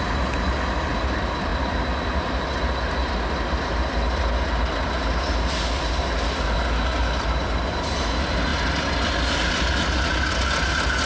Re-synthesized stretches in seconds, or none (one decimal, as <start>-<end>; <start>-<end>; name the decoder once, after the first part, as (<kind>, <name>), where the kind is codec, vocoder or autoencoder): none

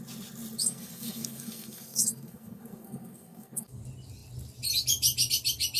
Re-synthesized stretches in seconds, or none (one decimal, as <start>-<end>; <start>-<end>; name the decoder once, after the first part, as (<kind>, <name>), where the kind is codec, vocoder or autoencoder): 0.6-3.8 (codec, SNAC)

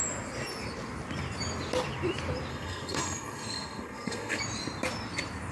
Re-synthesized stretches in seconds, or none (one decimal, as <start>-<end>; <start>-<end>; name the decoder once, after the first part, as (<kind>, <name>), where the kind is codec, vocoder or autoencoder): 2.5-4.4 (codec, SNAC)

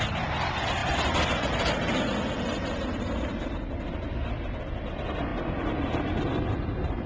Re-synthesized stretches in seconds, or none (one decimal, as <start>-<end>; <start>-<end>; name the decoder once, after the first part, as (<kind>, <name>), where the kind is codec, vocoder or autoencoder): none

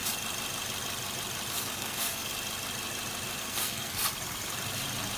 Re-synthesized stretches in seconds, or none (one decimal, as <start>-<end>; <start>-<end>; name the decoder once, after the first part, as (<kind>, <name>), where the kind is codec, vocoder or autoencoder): 1.5-2.3 (codec, SNAC); 3.4-4.0

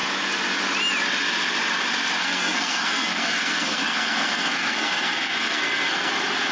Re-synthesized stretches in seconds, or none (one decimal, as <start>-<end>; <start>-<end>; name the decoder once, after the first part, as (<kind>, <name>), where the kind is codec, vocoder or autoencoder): 2.2-6.1 (codec, SNAC)

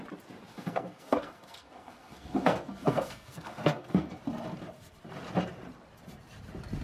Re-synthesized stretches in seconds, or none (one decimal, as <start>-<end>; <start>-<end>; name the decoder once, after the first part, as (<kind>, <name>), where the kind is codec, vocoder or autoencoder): 0.5-4.2 (codec, SNAC)

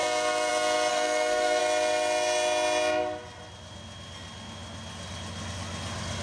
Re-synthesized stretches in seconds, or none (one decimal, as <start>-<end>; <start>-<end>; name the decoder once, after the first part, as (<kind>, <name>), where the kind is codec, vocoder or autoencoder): 0.9-1.6 (codec, SNAC)